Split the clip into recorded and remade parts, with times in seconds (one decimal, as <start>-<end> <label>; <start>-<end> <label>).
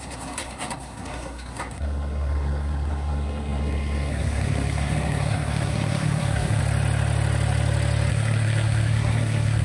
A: 0.0-6.6 remade; 6.6-8.1 recorded; 8.1-9.6 remade